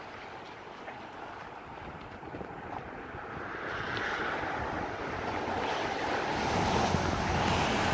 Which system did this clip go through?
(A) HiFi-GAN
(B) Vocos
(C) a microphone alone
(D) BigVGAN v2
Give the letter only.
C